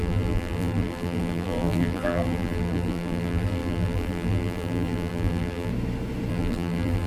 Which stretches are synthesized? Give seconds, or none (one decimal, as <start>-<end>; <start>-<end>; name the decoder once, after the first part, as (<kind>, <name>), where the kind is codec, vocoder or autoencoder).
0.0-5.7 (vocoder, BigVGAN v2); 6.3-7.1